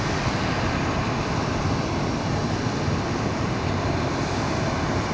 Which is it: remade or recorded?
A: recorded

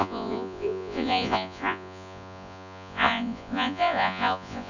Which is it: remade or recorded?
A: remade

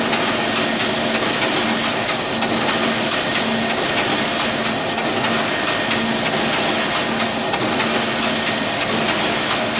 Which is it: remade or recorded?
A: recorded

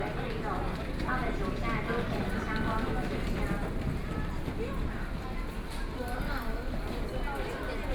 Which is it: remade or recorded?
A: recorded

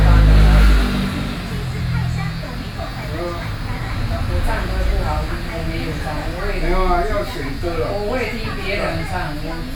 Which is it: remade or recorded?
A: recorded